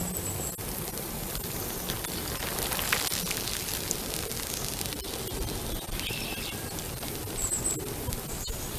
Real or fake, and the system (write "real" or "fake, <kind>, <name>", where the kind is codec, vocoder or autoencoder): real